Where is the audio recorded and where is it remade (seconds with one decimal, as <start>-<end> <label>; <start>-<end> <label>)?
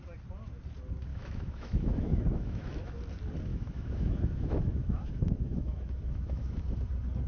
0.0-1.1 recorded; 1.1-3.0 remade; 3.0-3.5 recorded; 3.5-6.6 remade; 6.6-7.3 recorded